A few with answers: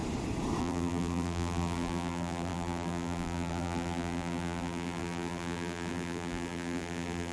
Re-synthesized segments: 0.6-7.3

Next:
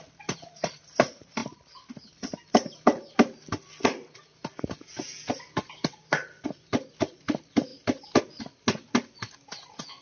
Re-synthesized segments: none

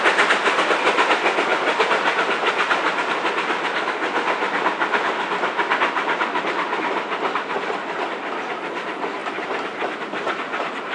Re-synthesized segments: none

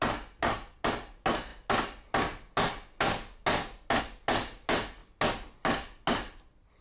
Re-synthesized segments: none

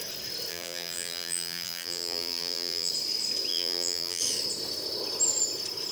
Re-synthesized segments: 0.5-2.9; 3.5-4.2

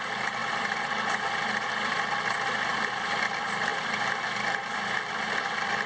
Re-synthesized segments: 0.0-5.9